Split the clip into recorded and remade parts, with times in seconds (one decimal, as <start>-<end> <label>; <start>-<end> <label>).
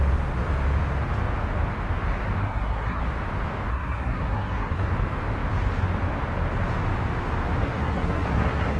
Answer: 0.0-2.4 recorded; 2.4-3.0 remade; 3.0-3.7 recorded; 3.7-4.9 remade; 4.9-7.6 recorded; 7.6-8.8 remade